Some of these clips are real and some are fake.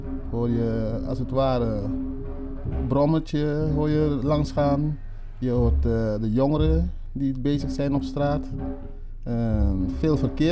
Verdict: real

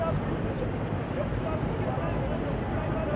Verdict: real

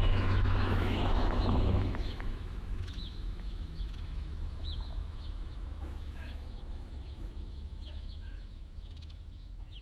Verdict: fake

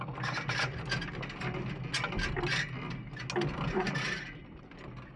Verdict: real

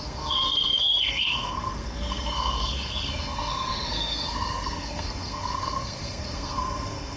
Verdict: fake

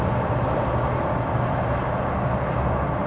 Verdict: real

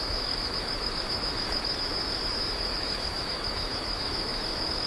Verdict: fake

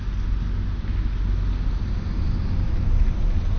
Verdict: real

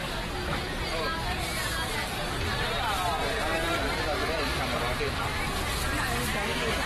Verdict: real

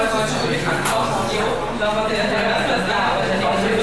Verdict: real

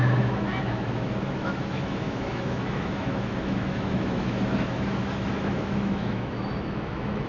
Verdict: fake